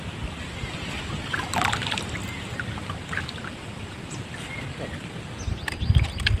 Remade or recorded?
recorded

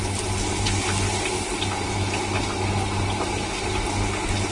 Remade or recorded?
recorded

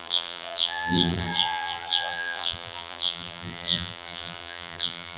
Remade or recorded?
remade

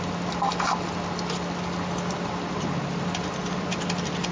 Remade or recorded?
recorded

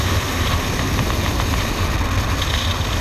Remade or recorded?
recorded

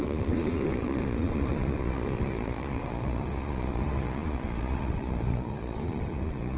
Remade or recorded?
remade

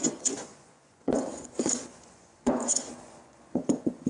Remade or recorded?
remade